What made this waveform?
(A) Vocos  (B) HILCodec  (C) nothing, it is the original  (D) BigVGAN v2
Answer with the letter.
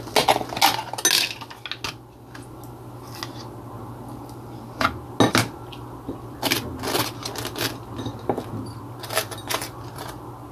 C